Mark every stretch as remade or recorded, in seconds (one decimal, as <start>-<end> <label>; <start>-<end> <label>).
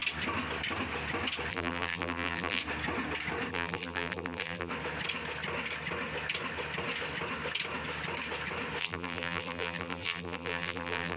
0.0-1.5 recorded; 1.5-2.6 remade; 2.6-3.5 recorded; 3.5-4.7 remade; 4.7-8.8 recorded; 8.8-11.2 remade